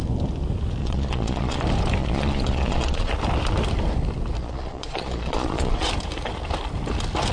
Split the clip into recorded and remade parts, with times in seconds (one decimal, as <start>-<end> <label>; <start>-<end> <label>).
0.0-0.8 recorded; 0.8-1.6 remade; 1.6-2.0 recorded; 2.0-3.1 remade; 3.1-4.4 recorded; 4.4-5.9 remade; 5.9-7.3 recorded